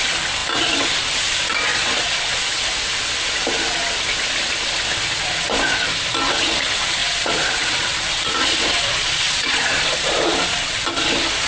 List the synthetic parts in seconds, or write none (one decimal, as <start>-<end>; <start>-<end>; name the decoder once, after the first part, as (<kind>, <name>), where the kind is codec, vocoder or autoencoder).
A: 1.7-2.6 (vocoder, Vocos); 7.0-10.8